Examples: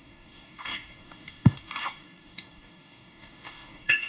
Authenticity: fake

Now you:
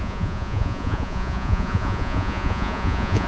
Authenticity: fake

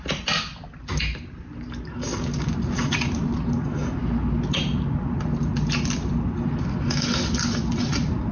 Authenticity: real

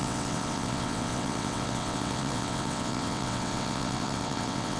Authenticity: fake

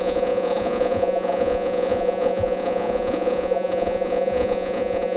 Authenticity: fake